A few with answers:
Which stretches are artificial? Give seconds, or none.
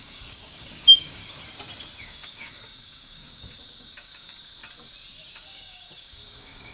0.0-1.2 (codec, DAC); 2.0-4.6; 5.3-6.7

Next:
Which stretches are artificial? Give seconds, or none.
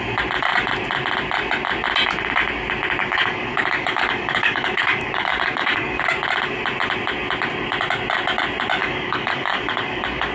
3.0-6.0 (codec, DAC); 8.8-10.3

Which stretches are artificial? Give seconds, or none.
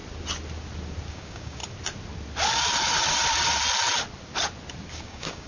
1.1-1.6 (codec, DAC); 4.9-5.5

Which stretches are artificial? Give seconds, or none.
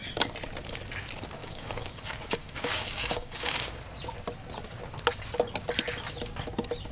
1.4-2.0 (codec, DAC); 2.4-3.8